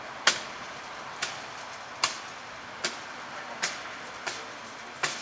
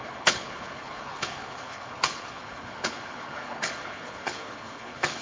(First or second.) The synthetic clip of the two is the second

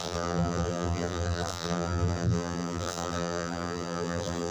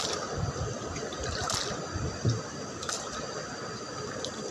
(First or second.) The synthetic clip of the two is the first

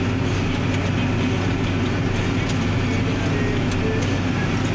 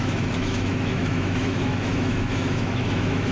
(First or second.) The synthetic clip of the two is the second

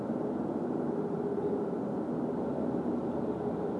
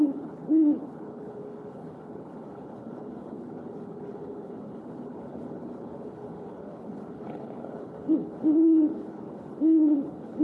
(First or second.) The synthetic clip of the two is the second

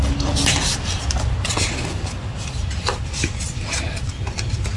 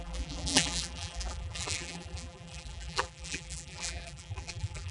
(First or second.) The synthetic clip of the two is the second